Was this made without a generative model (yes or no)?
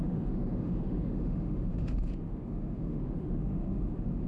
no